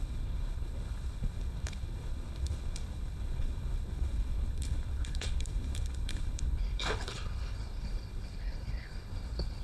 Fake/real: fake